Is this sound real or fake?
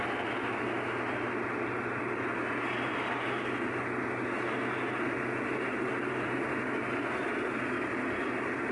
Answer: real